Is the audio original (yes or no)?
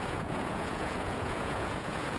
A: no